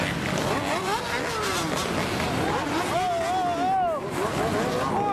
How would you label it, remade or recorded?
recorded